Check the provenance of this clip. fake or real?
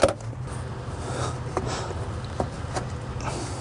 real